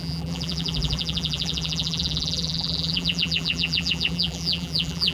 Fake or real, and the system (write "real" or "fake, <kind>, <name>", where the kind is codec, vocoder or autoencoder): fake, vocoder, BigVGAN v2